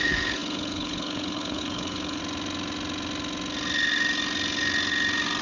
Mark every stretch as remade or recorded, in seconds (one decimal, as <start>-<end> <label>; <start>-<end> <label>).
0.0-2.2 remade; 2.2-5.4 recorded

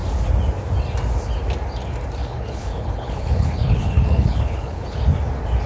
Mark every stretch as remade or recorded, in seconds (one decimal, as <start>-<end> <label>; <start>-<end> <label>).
0.0-2.2 recorded; 2.2-5.0 remade; 5.0-5.7 recorded